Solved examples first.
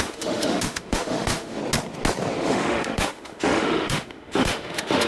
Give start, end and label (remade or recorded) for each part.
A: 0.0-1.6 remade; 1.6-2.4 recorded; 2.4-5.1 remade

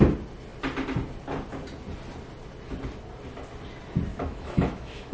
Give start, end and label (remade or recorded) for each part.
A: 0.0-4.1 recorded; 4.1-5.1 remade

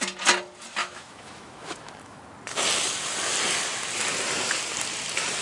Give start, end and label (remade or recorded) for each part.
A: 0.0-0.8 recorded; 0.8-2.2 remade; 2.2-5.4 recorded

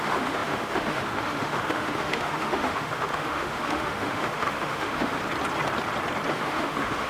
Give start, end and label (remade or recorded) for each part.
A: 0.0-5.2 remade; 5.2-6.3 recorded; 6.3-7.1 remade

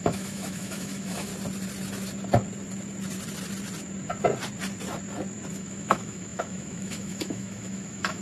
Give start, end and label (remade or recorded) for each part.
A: 0.0-1.3 remade; 1.3-5.5 recorded; 5.5-8.2 remade